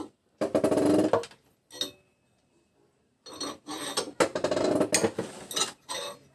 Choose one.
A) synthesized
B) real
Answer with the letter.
B